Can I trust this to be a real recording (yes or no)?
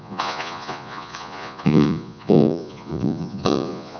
no